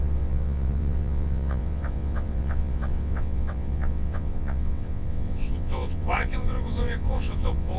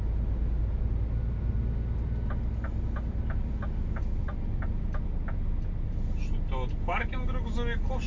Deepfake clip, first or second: first